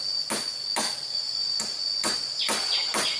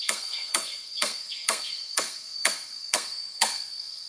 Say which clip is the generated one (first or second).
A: second